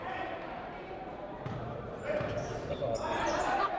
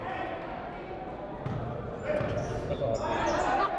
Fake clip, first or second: first